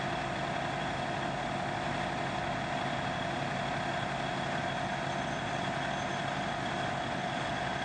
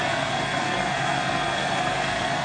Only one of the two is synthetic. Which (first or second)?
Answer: second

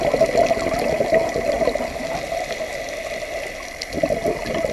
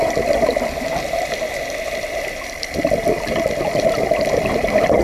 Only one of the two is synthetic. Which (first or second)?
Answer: second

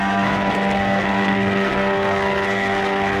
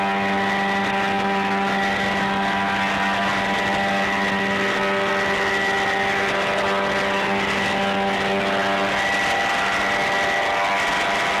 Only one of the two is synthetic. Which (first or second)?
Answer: first